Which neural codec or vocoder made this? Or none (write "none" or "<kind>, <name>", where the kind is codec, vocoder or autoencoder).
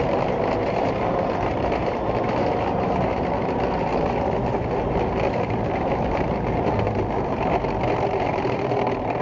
vocoder, BigVGAN v2